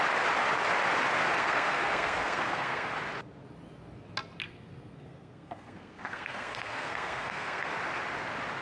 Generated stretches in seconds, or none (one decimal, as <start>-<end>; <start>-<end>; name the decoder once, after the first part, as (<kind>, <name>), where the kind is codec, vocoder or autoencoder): 1.4-2.9 (codec, SNAC); 4.4-7.7